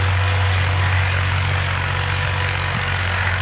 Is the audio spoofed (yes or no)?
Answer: yes